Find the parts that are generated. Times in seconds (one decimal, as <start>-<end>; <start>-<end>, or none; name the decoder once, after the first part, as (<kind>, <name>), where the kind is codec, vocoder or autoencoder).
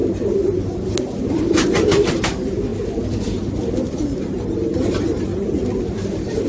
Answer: 1.2-6.5 (vocoder, BigVGAN v2)